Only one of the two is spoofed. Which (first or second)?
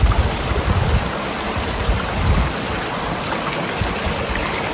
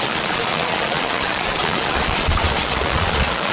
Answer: second